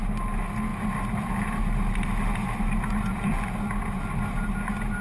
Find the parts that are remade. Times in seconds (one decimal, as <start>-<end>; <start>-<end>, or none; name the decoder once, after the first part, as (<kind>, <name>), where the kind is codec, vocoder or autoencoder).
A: none